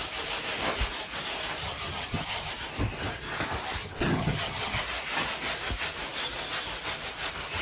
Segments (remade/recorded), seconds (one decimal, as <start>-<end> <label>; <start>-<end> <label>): 0.0-1.6 recorded; 1.6-2.5 remade; 2.5-3.8 recorded; 3.8-4.8 remade; 4.8-7.6 recorded